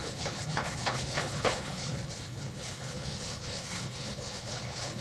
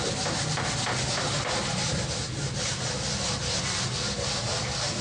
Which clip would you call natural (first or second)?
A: second